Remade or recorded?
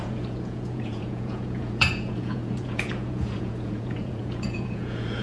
remade